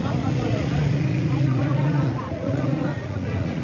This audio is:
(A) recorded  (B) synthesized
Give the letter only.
B